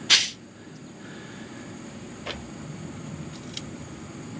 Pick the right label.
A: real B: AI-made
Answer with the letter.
A